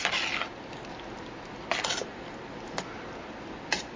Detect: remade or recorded recorded